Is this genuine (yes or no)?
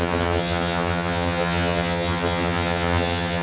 no